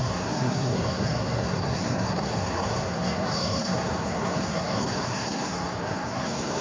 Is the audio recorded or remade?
remade